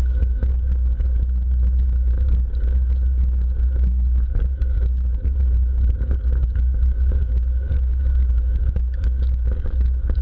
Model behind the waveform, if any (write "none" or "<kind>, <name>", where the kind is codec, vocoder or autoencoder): codec, DAC